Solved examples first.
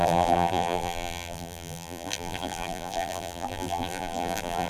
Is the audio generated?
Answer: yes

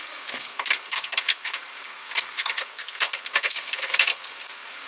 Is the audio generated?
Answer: yes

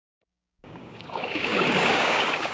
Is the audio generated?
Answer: yes